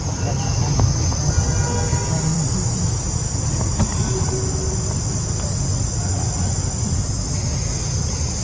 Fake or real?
real